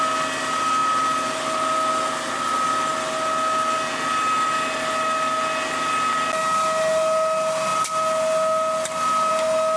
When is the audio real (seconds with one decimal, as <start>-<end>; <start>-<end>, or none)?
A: 0.0-9.8